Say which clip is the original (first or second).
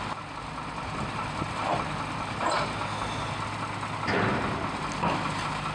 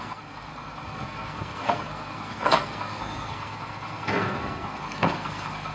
first